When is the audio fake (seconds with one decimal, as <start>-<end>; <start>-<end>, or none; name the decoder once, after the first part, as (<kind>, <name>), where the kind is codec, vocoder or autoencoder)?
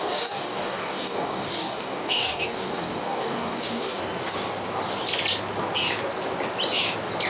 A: 0.0-4.0 (codec, DAC)